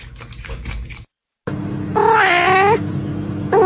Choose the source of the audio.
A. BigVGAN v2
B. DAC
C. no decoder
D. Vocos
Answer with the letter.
C